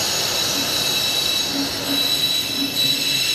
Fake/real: real